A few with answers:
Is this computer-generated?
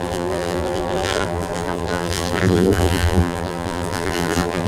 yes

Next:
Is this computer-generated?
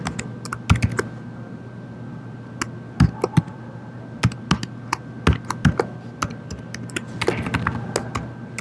no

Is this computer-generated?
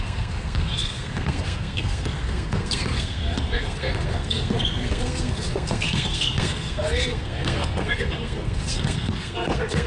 yes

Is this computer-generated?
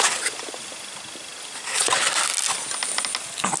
no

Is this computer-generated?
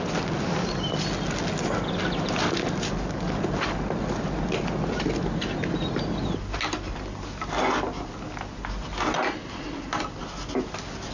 no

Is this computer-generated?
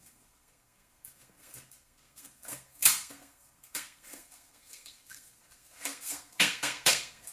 yes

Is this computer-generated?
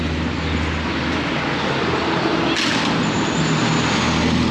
no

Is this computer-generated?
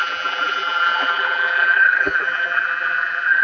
yes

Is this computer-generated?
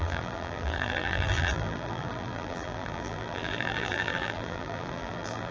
yes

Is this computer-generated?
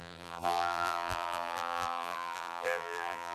yes